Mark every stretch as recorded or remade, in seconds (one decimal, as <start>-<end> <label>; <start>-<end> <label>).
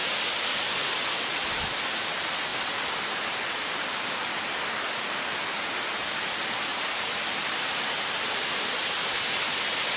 0.0-2.5 recorded; 2.5-4.2 remade; 4.2-6.7 recorded; 6.7-10.0 remade